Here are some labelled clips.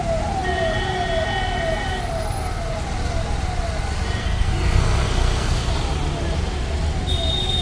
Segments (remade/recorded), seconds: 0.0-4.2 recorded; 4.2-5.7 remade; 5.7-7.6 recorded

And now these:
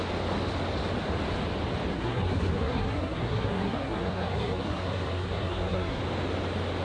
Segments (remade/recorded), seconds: 0.0-1.9 recorded; 1.9-6.0 remade; 6.0-6.8 recorded

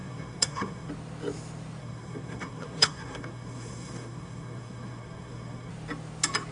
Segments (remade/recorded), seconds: 0.0-0.9 remade; 0.9-1.8 recorded; 1.8-5.7 remade; 5.7-6.5 recorded

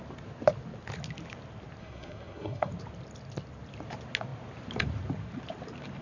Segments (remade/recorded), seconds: 0.0-1.8 recorded; 1.8-2.7 remade; 2.7-6.0 recorded

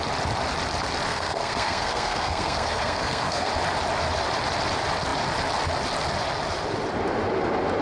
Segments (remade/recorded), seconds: 0.0-1.1 recorded; 1.1-3.5 remade; 3.5-7.8 recorded

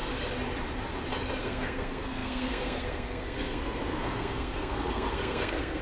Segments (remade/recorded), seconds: 0.0-1.4 recorded; 1.4-5.8 remade

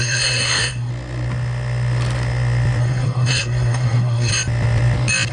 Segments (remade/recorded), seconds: 0.0-0.9 remade; 0.9-2.8 recorded; 2.8-4.3 remade; 4.3-5.3 recorded

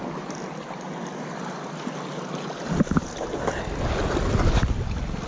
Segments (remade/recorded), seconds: 0.0-5.3 recorded